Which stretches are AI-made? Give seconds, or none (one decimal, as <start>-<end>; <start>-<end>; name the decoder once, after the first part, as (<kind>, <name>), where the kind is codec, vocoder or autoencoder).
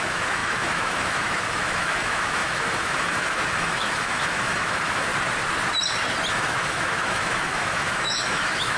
0.0-5.1 (autoencoder, DAC-VAE); 6.3-8.8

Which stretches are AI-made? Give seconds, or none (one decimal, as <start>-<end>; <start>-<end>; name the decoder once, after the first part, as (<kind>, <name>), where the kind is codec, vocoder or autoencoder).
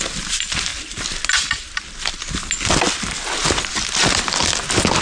none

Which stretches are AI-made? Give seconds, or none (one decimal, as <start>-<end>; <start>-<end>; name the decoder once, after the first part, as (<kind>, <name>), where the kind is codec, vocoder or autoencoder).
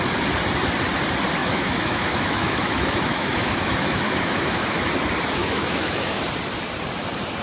1.4-4.9 (autoencoder, DAC-VAE); 5.4-6.2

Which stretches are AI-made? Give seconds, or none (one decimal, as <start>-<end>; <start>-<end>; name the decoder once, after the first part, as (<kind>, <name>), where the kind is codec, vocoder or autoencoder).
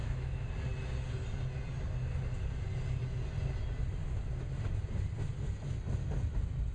0.0-0.5 (autoencoder, DAC-VAE)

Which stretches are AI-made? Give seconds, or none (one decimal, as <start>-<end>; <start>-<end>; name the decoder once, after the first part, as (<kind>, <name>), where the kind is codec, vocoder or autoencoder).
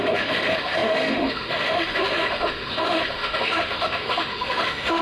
0.0-5.0 (autoencoder, DAC-VAE)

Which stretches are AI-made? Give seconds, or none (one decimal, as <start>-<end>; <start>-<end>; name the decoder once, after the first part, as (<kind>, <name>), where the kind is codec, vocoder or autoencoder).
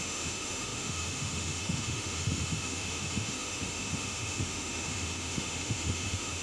0.0-6.4 (autoencoder, DAC-VAE)